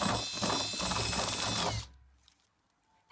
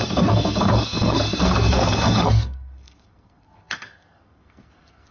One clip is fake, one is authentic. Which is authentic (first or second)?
first